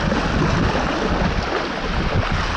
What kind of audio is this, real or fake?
real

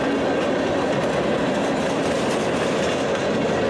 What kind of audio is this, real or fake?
real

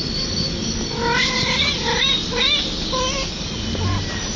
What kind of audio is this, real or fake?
real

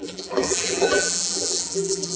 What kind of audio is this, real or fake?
fake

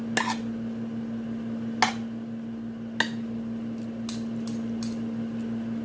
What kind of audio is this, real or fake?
real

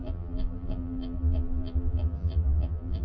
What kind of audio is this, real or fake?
fake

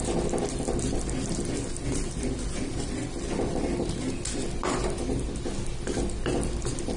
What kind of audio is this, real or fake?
real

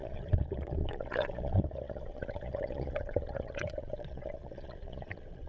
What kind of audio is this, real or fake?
fake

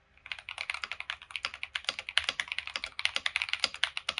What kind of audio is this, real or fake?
real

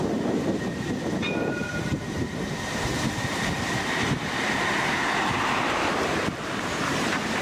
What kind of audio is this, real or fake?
fake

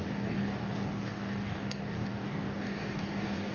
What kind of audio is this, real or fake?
fake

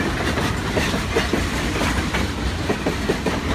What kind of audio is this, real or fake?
real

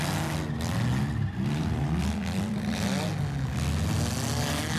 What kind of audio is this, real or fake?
real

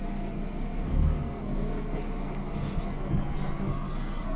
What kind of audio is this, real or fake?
fake